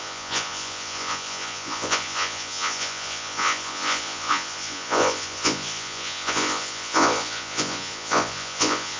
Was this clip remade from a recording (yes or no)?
yes